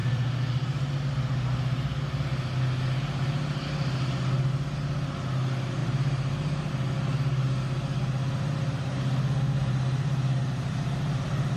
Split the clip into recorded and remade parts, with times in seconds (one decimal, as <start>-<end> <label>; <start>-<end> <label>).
0.0-5.8 recorded; 5.8-6.7 remade; 6.7-9.6 recorded; 9.6-11.6 remade